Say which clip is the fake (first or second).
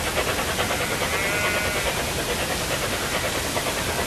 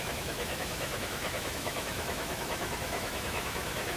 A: second